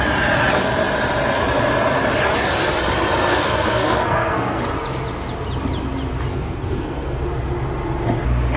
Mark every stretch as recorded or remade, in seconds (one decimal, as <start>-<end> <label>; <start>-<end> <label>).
0.0-3.3 recorded; 3.3-4.6 remade; 4.6-6.3 recorded; 6.3-7.2 remade; 7.2-8.6 recorded